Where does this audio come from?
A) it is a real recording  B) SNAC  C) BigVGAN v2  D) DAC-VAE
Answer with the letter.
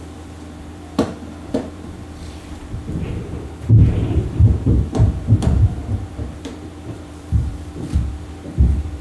C